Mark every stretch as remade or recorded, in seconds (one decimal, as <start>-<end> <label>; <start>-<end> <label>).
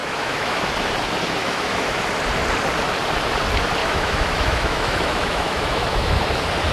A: 0.0-0.6 remade; 0.6-1.4 recorded; 1.4-2.0 remade; 2.0-3.8 recorded; 3.8-6.3 remade; 6.3-6.7 recorded